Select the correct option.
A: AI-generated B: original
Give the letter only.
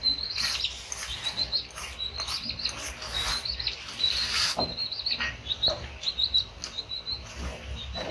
B